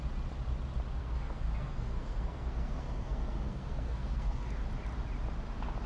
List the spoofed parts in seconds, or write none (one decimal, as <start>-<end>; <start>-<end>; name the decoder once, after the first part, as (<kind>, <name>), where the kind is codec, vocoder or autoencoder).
1.0-4.5 (codec, SNAC)